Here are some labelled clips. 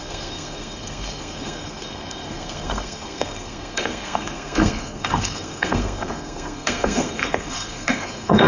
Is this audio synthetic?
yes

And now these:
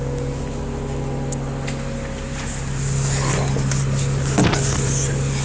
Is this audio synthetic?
no